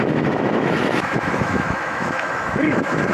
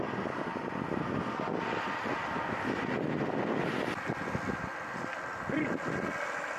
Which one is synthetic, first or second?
first